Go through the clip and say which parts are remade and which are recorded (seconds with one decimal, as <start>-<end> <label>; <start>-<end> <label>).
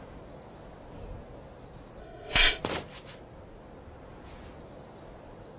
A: 0.0-2.0 recorded; 2.0-2.6 remade; 2.6-5.6 recorded